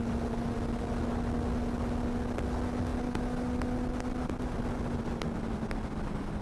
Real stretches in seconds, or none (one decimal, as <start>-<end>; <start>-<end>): 0.0-6.4